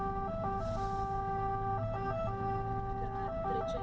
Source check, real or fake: real